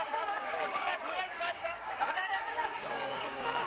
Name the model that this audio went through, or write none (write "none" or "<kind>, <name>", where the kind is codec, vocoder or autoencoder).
codec, DAC